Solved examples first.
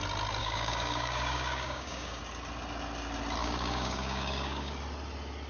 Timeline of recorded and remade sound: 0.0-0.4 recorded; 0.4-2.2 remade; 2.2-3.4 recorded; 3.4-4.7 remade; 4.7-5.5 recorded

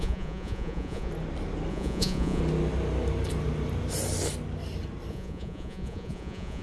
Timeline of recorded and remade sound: 0.0-1.1 remade; 1.1-1.7 recorded; 1.7-2.4 remade; 2.4-5.1 recorded; 5.1-6.6 remade

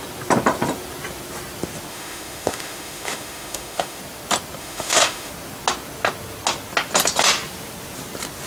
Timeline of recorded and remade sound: 0.0-1.9 recorded; 1.9-4.0 remade; 4.0-4.6 recorded; 4.6-5.3 remade; 5.3-8.5 recorded

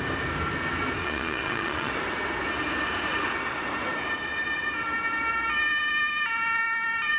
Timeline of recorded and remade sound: 0.0-1.0 recorded; 1.0-1.9 remade; 1.9-7.2 recorded

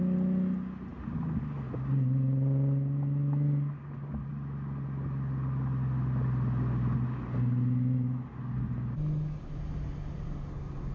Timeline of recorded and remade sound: 0.0-10.9 recorded

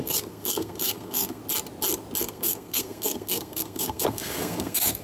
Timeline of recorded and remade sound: 0.0-1.4 remade; 1.4-2.2 recorded; 2.2-5.0 remade

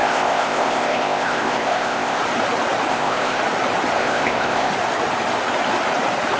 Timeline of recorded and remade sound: 0.0-2.2 remade; 2.2-2.9 recorded; 2.9-3.4 remade; 3.4-4.0 recorded; 4.0-4.7 remade; 4.7-6.4 recorded